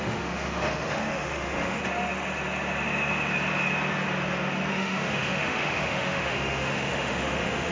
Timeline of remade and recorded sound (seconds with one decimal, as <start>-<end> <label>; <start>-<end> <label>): 0.0-1.8 remade; 1.8-4.7 recorded; 4.7-7.7 remade